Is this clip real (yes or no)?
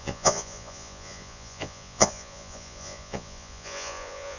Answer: no